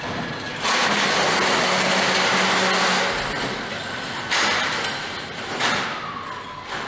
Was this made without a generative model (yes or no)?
yes